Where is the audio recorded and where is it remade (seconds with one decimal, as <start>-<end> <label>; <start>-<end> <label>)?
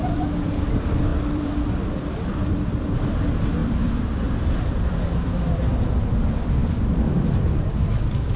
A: 0.0-8.4 remade